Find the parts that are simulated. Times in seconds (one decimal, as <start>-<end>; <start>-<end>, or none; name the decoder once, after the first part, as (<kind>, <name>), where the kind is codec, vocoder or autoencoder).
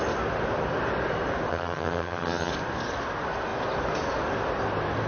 1.5-2.5 (vocoder, HiFi-GAN)